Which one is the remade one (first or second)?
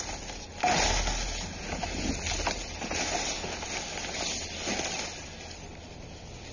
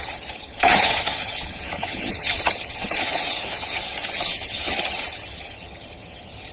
second